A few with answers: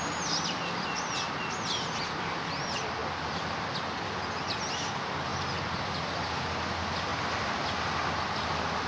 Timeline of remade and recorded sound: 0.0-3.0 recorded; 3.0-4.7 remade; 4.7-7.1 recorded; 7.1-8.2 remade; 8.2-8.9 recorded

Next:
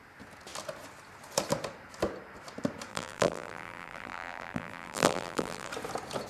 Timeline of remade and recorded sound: 0.0-2.9 recorded; 2.9-5.7 remade; 5.7-6.3 recorded

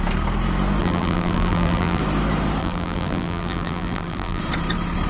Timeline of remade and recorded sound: 0.0-0.8 recorded; 0.8-2.0 remade; 2.0-2.6 recorded; 2.6-4.4 remade; 4.4-5.1 recorded

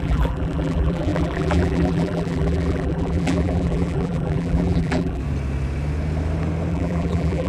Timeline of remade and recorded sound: 0.0-5.2 remade; 5.2-6.7 recorded; 6.7-7.5 remade